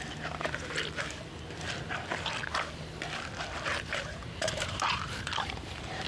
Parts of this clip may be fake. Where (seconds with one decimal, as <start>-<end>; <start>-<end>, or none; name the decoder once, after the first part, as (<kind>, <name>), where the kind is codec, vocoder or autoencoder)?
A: 4.2-6.1 (vocoder, BigVGAN v2)